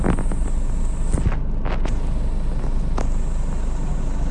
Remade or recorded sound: recorded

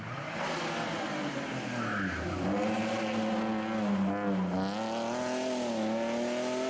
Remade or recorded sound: recorded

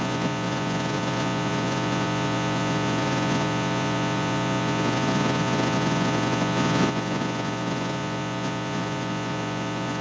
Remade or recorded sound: remade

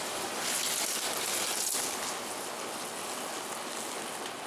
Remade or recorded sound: recorded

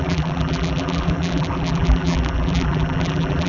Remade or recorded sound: remade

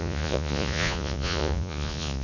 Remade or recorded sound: remade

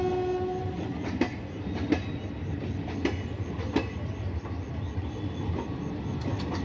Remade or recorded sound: recorded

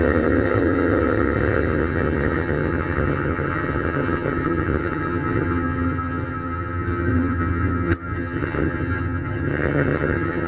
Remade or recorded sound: remade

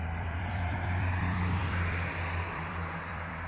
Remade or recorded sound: remade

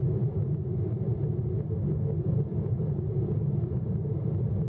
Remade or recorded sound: recorded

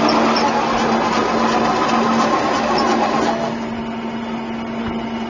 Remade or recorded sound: recorded